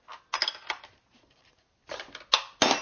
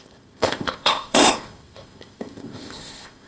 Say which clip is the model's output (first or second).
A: second